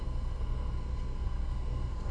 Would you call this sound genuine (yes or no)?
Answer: no